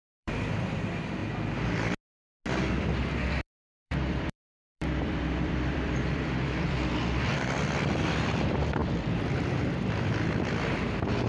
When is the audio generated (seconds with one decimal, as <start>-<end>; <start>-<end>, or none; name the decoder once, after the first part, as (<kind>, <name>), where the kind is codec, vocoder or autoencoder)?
0.0-1.2 (vocoder, BigVGAN v2); 2.9-11.3